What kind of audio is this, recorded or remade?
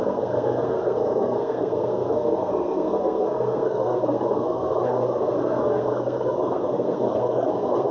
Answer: remade